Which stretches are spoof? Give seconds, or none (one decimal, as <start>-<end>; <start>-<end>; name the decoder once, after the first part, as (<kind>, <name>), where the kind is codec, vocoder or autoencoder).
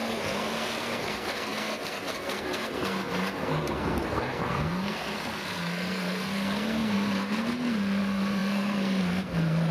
0.0-9.7 (codec, SNAC)